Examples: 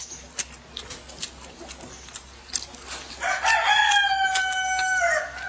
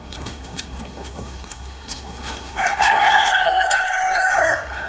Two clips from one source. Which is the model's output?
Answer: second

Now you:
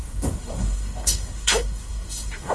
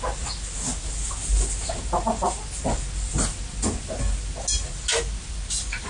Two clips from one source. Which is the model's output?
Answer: first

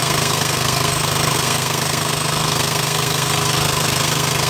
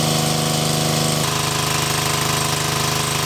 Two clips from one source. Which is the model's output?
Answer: first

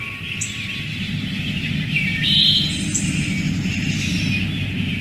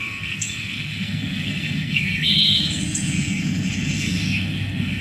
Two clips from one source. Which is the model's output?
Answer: second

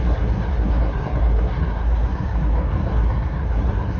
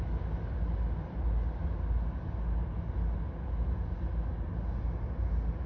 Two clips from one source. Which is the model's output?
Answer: first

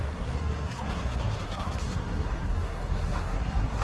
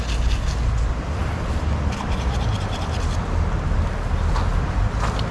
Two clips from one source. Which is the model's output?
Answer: first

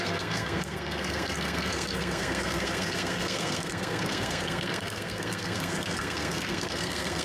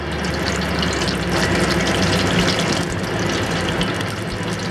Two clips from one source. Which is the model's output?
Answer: first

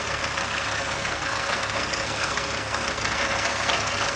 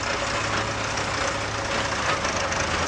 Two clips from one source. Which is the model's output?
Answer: first